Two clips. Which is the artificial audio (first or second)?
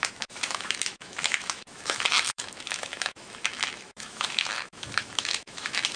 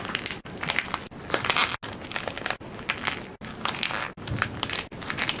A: first